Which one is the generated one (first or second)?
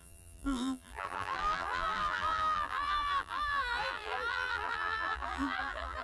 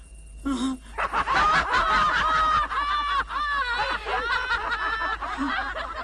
first